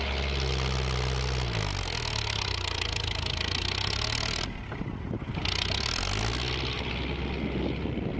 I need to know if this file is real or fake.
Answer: real